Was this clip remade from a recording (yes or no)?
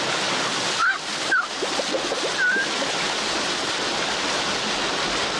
no